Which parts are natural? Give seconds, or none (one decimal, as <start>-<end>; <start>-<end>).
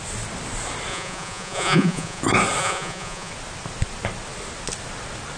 0.0-0.9; 2.2-2.6; 3.3-5.4